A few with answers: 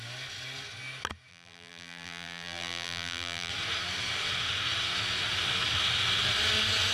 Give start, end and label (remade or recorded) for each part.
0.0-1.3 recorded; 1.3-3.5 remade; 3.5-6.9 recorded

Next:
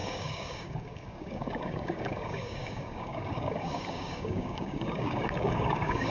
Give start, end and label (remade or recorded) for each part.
0.0-6.1 remade

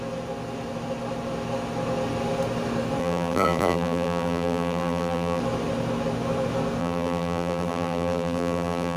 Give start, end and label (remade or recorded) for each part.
0.0-3.0 recorded; 3.0-5.4 remade; 5.4-6.8 recorded; 6.8-9.0 remade

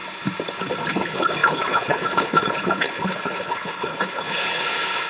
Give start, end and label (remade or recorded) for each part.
0.0-0.9 recorded; 0.9-5.1 remade

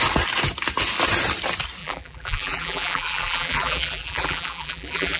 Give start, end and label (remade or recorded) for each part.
0.0-1.8 recorded; 1.8-5.2 remade

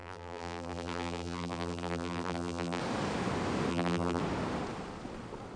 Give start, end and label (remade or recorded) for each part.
0.0-2.8 remade; 2.8-3.7 recorded; 3.7-4.2 remade; 4.2-5.6 recorded